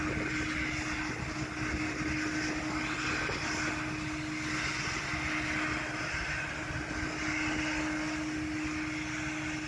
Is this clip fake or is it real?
real